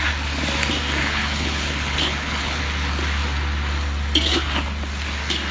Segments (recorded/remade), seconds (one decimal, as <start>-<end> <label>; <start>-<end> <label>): 0.0-1.0 recorded; 1.0-2.6 remade; 2.6-5.5 recorded